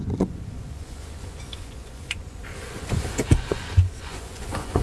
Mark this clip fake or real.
fake